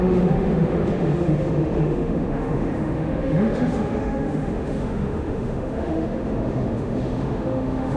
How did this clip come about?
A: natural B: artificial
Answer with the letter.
B